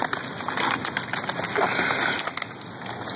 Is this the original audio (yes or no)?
yes